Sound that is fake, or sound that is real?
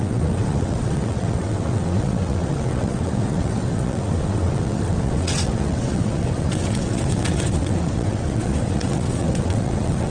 fake